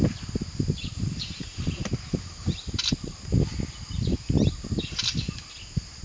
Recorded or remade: recorded